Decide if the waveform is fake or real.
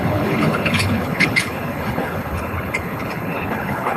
fake